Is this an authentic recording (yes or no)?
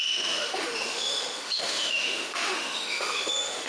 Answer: no